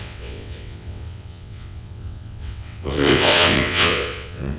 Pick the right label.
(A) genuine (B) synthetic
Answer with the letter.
B